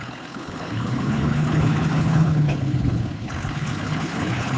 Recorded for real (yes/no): no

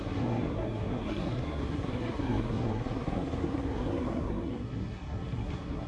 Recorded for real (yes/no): no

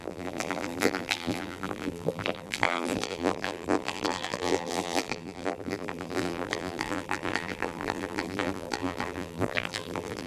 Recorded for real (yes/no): no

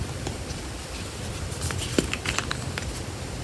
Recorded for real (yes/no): no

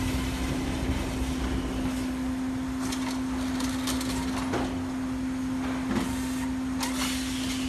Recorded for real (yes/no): yes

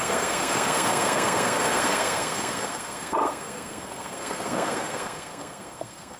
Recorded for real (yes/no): no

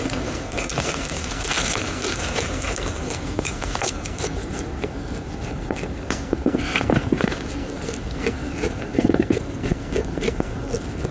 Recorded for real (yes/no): no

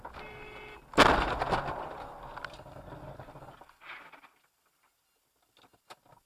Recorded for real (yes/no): yes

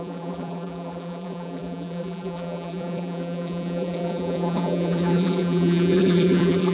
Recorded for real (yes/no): no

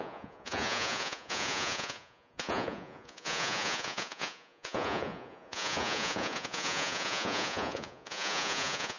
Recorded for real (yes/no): no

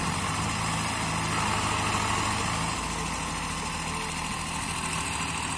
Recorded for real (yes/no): yes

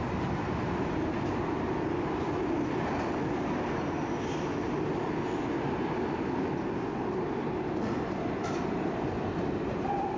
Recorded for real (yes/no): yes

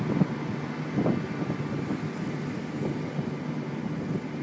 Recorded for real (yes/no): yes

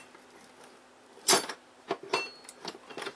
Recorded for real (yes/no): yes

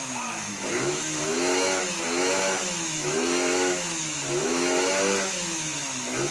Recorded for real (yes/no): no